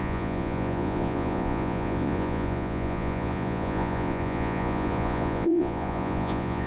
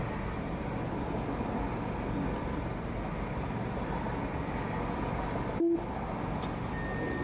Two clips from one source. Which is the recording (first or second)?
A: second